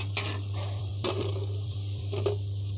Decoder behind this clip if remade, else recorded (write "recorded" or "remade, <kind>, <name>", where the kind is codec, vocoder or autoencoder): remade, vocoder, BigVGAN v2